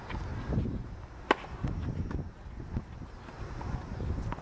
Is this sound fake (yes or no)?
no